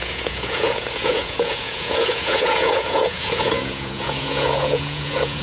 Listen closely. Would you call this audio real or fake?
fake